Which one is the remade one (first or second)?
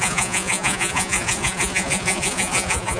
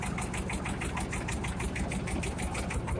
first